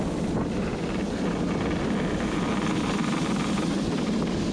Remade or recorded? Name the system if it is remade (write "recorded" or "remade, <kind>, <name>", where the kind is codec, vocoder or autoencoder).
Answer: recorded